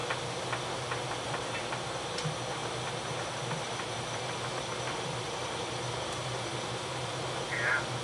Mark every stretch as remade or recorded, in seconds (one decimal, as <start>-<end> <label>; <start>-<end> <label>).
0.0-8.0 recorded